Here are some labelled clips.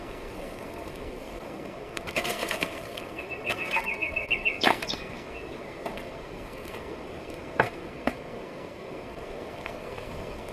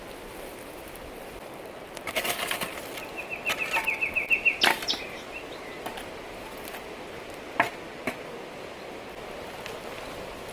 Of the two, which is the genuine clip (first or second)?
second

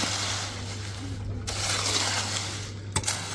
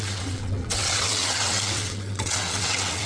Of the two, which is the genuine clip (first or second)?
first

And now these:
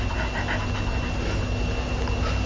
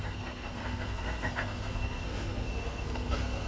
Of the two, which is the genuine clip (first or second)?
first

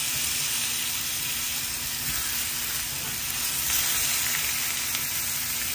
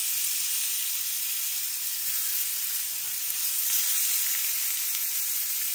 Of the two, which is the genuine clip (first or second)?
first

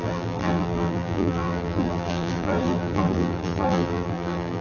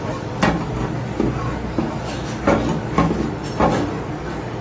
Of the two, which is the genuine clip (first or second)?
second